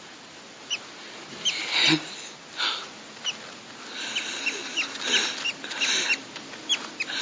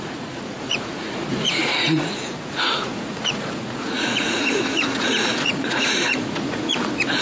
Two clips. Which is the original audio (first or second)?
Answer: first